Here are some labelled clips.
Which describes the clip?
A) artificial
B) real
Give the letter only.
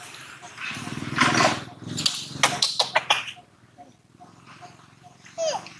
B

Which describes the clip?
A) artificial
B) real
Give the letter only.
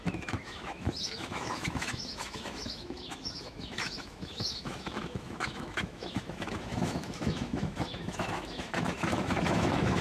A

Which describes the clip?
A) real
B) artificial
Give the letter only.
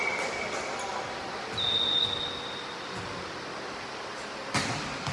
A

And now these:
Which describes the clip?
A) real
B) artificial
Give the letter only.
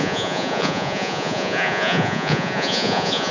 B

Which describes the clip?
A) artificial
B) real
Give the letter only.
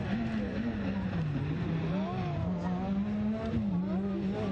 B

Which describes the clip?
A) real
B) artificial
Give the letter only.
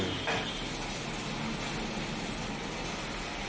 A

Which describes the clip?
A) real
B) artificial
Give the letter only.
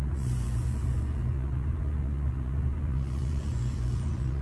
B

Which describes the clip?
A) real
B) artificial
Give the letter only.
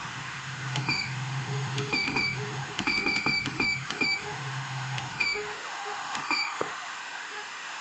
B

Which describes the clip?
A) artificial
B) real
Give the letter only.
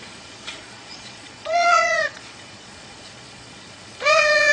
A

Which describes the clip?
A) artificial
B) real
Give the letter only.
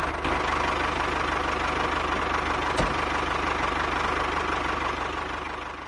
B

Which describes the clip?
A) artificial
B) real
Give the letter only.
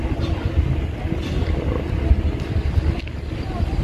B